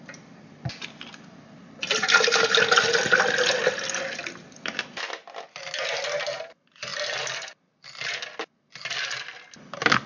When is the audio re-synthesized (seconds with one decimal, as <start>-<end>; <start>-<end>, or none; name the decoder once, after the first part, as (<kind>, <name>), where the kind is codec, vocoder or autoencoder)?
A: none